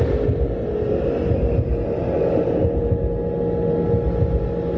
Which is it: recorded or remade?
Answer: recorded